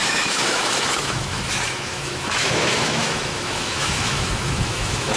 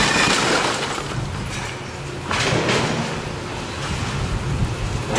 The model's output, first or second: first